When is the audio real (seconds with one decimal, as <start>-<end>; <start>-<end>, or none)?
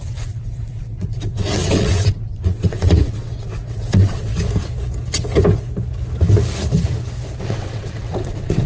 4.3-7.4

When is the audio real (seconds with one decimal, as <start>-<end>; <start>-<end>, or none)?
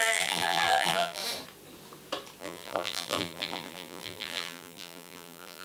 1.2-2.4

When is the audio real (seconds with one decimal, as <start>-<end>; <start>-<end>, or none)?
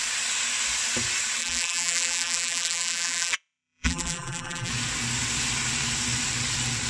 0.0-1.4; 4.7-6.9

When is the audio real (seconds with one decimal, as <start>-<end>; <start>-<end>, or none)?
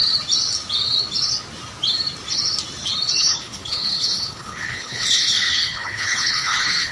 0.0-3.2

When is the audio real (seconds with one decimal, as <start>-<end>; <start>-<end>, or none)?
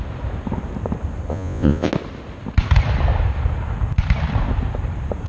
0.0-1.3; 1.9-5.3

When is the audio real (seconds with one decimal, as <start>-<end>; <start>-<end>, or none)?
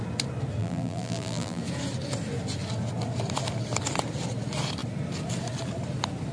0.0-0.6; 1.6-6.3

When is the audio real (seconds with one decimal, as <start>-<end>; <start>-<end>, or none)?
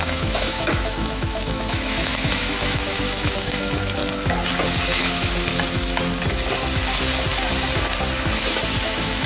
4.0-5.0; 5.5-8.8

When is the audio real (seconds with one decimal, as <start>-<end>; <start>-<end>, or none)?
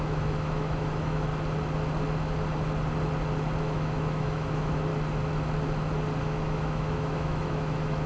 1.3-3.6; 4.9-6.2